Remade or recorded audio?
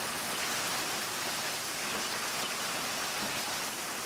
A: recorded